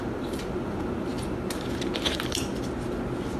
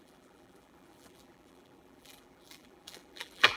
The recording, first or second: first